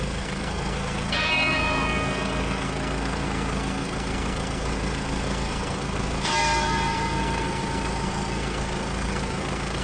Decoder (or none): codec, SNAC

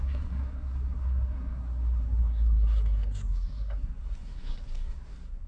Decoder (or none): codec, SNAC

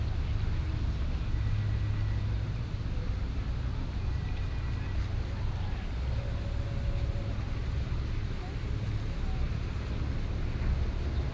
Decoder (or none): none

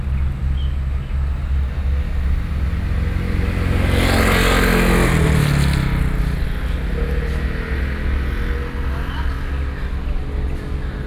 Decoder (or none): none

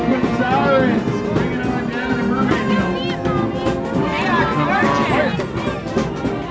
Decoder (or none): none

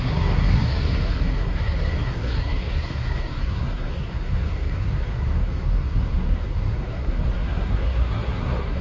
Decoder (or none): codec, SNAC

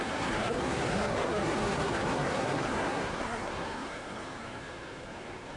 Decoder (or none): codec, SNAC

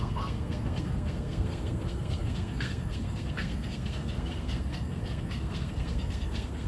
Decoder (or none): codec, SNAC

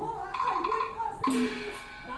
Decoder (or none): none